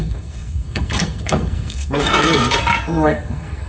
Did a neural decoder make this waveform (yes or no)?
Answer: yes